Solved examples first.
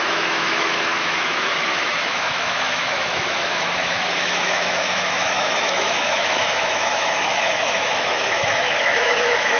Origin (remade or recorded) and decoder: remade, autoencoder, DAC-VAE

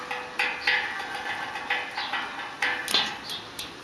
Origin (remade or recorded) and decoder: recorded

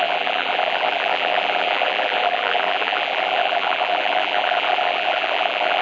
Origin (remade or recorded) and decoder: remade, vocoder, BigVGAN v2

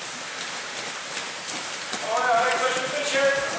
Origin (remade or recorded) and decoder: recorded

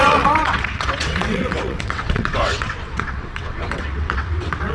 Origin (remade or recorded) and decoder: remade, vocoder, WaveNeXt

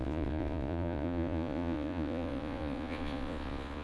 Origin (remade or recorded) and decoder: remade, vocoder, Vocos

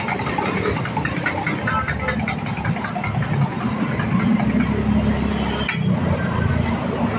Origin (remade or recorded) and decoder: recorded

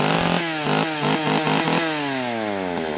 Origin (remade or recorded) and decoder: recorded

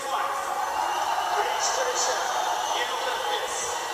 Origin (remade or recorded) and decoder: recorded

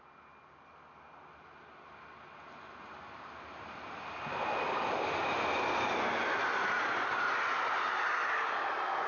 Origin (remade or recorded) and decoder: recorded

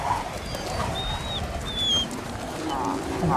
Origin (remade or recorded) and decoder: recorded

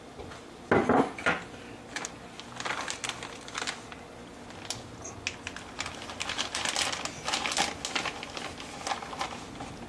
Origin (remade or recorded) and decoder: recorded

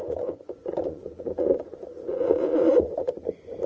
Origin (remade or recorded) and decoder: remade, vocoder, Vocos